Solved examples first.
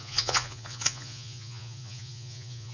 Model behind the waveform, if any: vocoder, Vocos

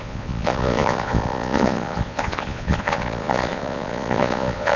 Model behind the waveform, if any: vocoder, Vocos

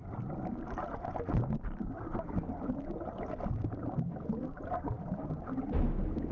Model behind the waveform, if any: none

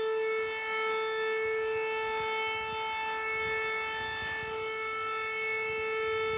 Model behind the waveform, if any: none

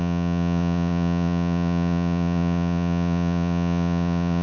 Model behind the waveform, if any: vocoder, Vocos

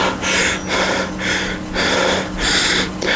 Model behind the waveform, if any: none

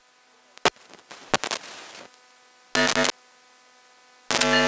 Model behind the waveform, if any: none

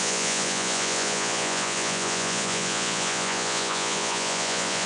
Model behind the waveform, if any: vocoder, Vocos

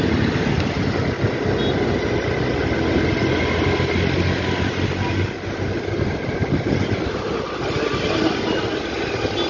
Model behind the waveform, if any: none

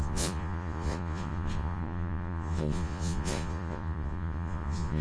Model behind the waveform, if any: vocoder, Vocos